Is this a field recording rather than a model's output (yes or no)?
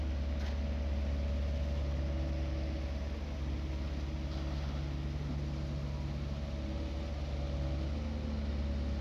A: yes